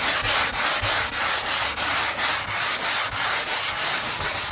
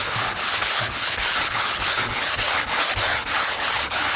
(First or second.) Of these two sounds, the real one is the first